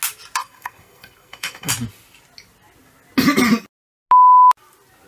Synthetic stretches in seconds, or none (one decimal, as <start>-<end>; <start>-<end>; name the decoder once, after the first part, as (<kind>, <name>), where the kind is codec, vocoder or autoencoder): 0.4-1.7 (codec, SNAC)